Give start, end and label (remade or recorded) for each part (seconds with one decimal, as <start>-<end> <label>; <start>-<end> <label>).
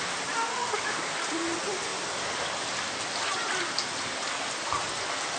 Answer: 0.0-0.5 recorded; 0.5-1.0 remade; 1.0-5.4 recorded